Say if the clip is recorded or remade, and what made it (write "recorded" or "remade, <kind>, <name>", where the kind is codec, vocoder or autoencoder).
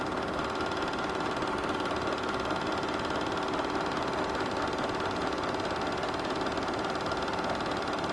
recorded